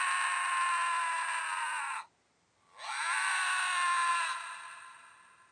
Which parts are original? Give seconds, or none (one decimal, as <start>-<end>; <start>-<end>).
0.0-5.5

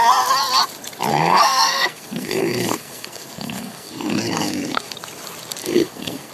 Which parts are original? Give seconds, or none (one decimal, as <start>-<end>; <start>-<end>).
0.0-1.1; 4.9-5.6

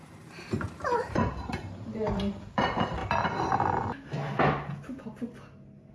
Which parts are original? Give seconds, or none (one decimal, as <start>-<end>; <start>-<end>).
3.0-5.9

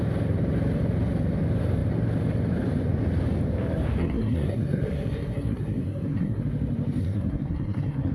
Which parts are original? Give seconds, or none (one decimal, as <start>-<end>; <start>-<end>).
0.0-4.0; 6.4-7.0